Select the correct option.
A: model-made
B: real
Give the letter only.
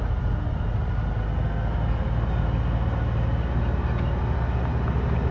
B